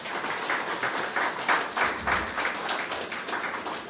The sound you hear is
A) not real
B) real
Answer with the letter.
B